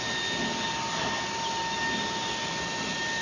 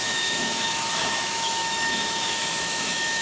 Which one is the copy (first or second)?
second